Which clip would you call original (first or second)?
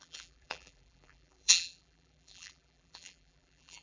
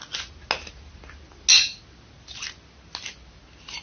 second